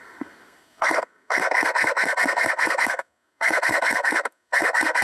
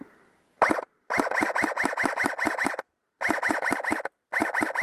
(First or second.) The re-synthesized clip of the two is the first